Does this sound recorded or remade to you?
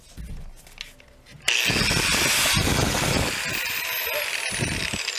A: recorded